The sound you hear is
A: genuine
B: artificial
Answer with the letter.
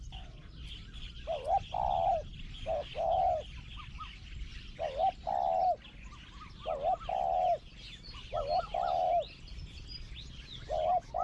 A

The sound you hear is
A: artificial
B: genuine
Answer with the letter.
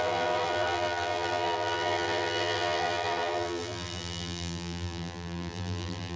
A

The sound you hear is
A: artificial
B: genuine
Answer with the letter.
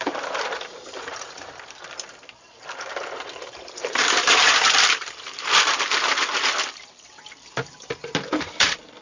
A